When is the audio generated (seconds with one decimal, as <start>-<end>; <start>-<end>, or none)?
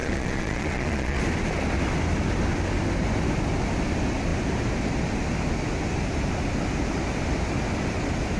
0.0-1.2